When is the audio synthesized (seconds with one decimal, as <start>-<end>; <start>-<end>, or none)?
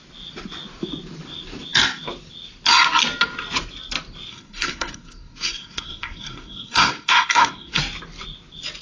4.3-7.8